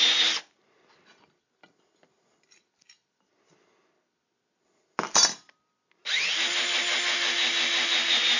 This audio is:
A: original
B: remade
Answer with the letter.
A